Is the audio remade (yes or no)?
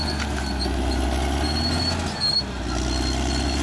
no